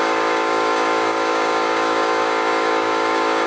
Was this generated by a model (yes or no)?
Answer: yes